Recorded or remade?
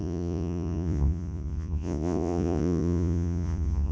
remade